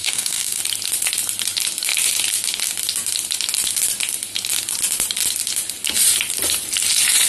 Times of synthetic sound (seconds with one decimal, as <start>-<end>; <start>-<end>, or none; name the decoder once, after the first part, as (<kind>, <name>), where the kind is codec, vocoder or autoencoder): 0.0-0.6 (codec, DAC)